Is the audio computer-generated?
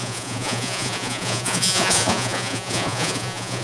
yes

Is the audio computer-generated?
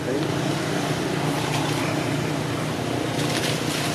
yes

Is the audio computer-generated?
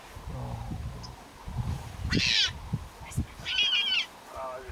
no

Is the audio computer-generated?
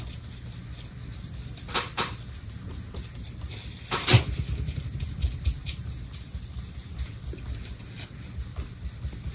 no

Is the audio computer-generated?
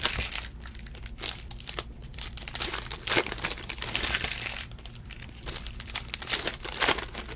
yes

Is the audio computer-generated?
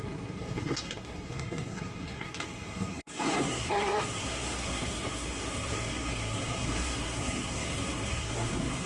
yes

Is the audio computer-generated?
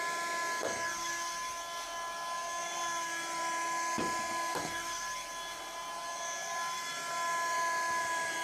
no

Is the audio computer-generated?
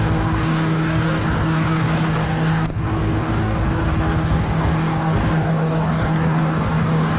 yes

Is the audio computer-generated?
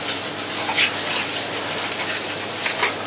no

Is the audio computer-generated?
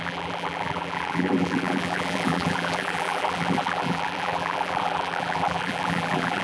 yes